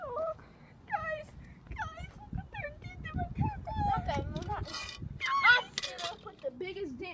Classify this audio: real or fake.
real